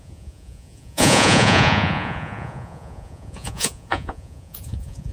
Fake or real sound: fake